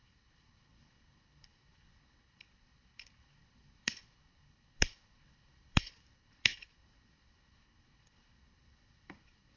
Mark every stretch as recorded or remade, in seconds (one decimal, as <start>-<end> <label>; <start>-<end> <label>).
0.0-9.6 remade